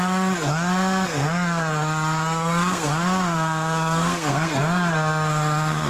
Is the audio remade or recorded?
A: remade